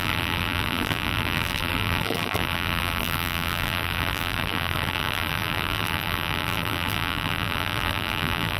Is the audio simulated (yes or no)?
yes